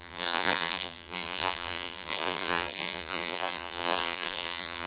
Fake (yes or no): yes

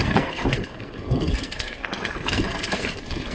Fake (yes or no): yes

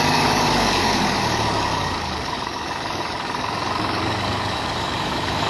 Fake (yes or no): yes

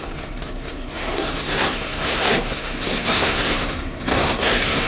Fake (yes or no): yes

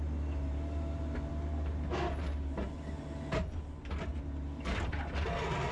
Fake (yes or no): no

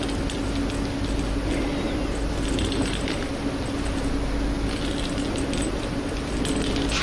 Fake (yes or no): no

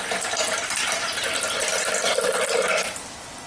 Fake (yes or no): no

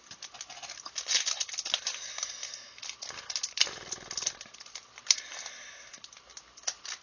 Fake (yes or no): no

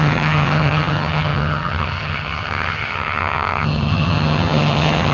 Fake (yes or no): yes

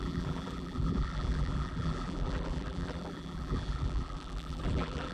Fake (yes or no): yes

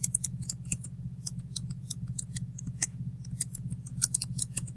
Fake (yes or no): yes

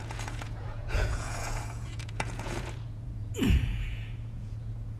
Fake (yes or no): yes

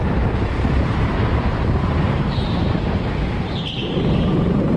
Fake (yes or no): yes